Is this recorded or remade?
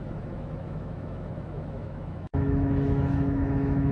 remade